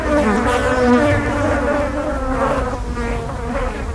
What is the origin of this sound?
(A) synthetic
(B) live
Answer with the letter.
B